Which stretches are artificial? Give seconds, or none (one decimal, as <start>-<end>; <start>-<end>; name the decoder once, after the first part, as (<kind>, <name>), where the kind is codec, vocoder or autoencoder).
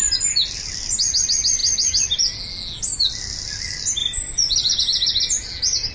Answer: 4.0-4.8 (vocoder, BigVGAN v2)